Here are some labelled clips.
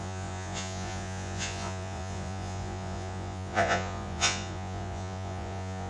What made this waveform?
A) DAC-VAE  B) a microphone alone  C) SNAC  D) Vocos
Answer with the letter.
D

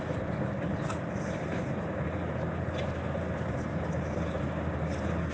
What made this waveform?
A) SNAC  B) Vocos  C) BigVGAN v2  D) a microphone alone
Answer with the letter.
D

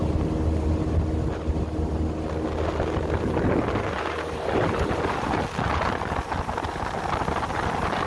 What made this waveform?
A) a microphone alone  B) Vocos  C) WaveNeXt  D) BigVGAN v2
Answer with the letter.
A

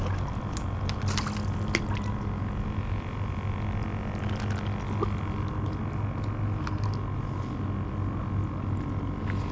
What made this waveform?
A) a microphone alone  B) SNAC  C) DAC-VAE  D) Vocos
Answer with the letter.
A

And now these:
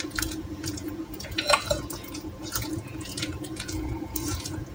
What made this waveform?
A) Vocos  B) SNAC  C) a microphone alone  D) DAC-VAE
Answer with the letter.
A